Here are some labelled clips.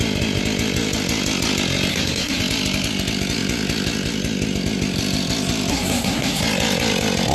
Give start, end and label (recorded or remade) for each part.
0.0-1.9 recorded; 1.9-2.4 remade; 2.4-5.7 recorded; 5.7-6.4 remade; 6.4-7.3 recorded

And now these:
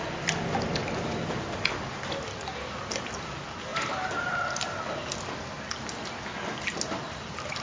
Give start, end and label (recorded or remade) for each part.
0.0-3.7 recorded; 3.7-4.4 remade; 4.4-7.6 recorded

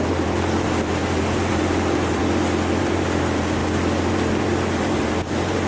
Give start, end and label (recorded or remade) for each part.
0.0-2.2 remade; 2.2-2.8 recorded; 2.8-3.6 remade; 3.6-4.1 recorded; 4.1-5.7 remade

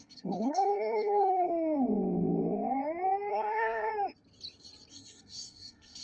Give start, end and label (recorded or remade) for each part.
0.0-1.5 remade; 1.5-3.3 recorded; 3.3-3.9 remade; 3.9-4.9 recorded; 4.9-6.0 remade

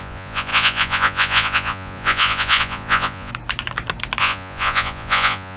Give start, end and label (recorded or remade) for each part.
0.0-3.3 remade; 3.3-4.2 recorded; 4.2-5.6 remade

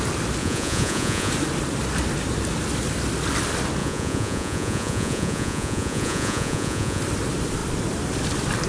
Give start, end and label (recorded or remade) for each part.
0.0-0.4 recorded; 0.4-1.3 remade; 1.3-3.8 recorded; 3.8-7.0 remade; 7.0-8.7 recorded

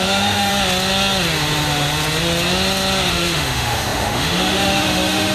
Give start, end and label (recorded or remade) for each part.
0.0-0.5 remade; 0.5-3.1 recorded; 3.1-5.3 remade

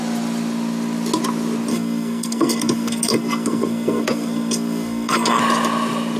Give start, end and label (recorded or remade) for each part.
0.0-1.7 recorded; 1.7-5.4 remade; 5.4-6.2 recorded